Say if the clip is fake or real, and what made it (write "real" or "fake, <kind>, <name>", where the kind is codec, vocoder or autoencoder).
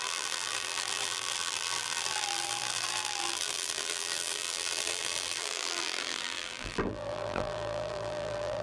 fake, vocoder, BigVGAN v2